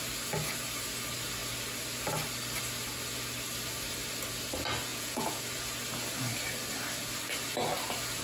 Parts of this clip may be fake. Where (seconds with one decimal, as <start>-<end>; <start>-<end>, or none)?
4.9-5.4